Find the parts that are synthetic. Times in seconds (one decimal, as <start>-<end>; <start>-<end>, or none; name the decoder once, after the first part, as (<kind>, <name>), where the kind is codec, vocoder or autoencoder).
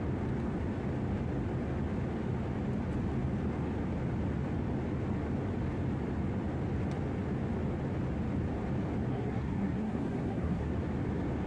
9.1-10.7 (codec, SNAC)